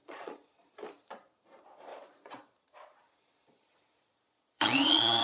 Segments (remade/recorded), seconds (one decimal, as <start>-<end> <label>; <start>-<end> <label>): 0.0-0.7 remade; 0.7-1.9 recorded; 1.9-5.2 remade